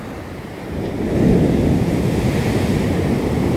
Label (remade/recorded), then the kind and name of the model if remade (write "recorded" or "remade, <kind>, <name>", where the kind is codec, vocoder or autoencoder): recorded